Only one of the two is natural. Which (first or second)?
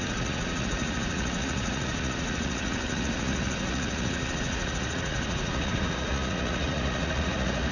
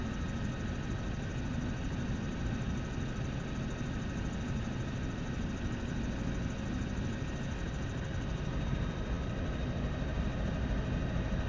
second